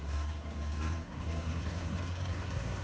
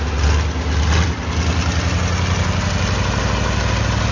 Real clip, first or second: second